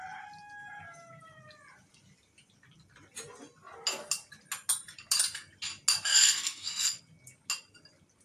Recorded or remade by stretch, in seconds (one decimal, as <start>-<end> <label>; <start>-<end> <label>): 0.0-6.1 recorded; 6.1-7.0 remade; 7.0-8.2 recorded

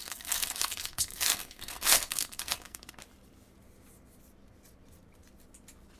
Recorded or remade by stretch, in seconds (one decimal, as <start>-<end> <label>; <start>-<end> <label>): 0.0-3.0 remade; 3.0-6.0 recorded